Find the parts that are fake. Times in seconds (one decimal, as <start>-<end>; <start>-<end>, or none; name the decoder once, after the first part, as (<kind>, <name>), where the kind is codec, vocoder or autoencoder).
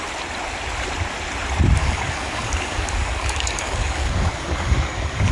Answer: 1.8-5.3 (codec, DAC)